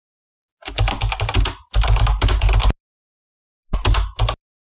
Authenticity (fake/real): real